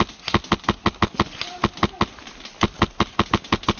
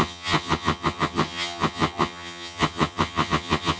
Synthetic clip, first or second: second